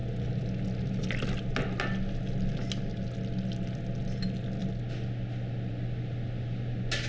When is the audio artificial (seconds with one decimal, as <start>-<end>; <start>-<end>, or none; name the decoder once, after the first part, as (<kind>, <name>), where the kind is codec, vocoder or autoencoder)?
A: none